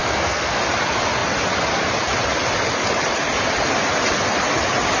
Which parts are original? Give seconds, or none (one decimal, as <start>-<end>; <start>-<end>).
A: 0.6-5.0